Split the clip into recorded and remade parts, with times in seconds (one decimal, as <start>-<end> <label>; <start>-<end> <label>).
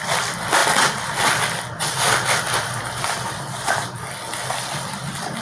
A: 0.0-5.4 recorded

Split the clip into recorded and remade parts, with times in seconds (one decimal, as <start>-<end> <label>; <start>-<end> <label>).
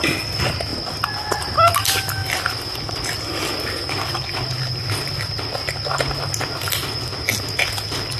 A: 0.0-8.2 recorded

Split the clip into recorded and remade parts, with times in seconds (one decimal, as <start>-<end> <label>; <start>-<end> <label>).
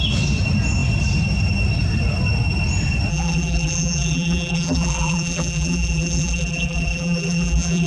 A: 0.0-3.1 recorded; 3.1-7.9 remade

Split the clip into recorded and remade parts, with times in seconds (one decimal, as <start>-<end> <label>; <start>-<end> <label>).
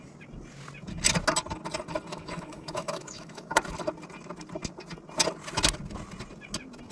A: 0.0-2.1 recorded; 2.1-3.6 remade; 3.6-6.9 recorded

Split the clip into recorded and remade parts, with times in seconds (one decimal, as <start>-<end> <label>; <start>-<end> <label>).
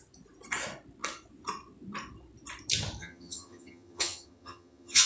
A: 0.0-3.0 recorded; 3.0-5.1 remade